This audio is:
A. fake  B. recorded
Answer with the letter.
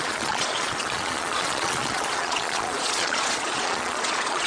A